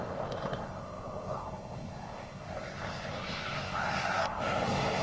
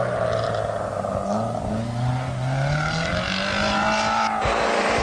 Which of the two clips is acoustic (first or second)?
second